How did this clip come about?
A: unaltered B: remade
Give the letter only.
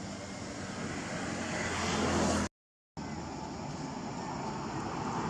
A